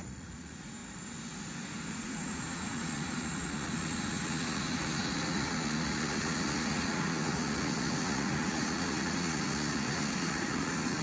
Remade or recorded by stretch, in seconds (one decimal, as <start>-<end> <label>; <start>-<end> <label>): 0.0-0.8 remade; 0.8-1.9 recorded; 1.9-11.0 remade